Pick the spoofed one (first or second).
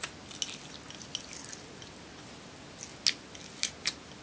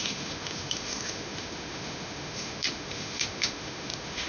second